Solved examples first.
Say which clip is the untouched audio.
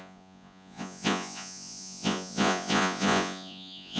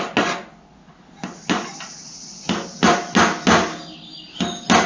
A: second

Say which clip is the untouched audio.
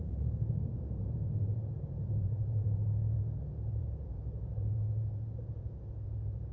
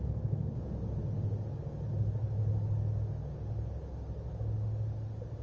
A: second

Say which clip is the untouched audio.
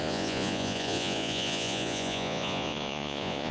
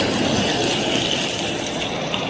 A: second